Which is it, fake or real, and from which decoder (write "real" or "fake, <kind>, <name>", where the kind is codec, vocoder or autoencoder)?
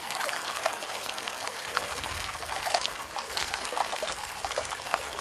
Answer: fake, codec, SNAC